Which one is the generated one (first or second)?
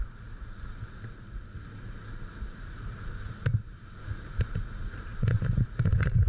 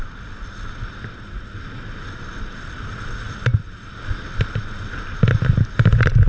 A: first